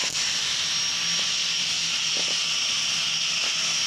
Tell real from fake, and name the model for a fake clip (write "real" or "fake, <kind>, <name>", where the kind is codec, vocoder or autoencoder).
real